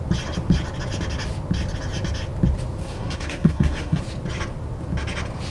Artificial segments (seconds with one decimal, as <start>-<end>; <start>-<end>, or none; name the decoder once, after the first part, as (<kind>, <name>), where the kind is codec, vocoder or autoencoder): 2.8-4.0 (codec, SNAC)